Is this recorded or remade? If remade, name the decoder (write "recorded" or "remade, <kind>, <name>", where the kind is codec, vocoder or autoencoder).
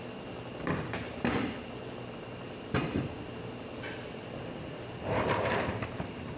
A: remade, vocoder, BigVGAN v2